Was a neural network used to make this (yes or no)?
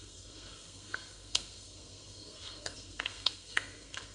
yes